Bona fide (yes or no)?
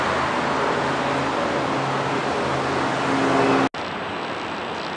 yes